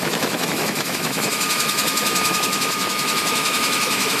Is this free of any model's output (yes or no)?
no